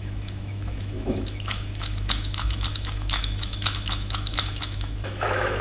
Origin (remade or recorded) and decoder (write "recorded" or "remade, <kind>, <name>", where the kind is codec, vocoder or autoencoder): remade, autoencoder, DAC-VAE